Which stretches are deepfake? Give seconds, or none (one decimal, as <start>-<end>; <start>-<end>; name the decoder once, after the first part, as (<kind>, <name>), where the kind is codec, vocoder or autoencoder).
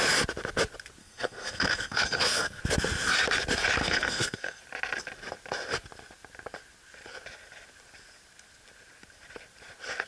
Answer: 1.0-2.6 (codec, SNAC); 3.8-4.6